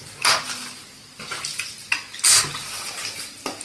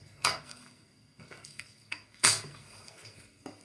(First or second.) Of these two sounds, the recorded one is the first